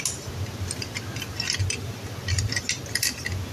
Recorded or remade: recorded